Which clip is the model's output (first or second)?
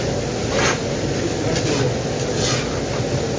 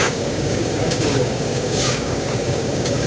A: second